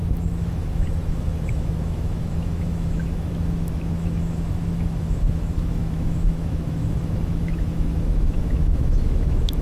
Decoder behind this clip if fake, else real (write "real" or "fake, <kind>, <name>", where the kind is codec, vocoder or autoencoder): fake, autoencoder, DAC-VAE